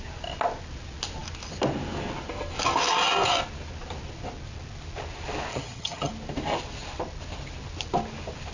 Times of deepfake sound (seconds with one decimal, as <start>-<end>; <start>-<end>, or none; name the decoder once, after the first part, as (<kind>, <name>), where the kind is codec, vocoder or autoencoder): 5.5-6.1 (vocoder, HiFi-GAN)